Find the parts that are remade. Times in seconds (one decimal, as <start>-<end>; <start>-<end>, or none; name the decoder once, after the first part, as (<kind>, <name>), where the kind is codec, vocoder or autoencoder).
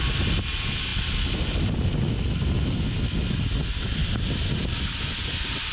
none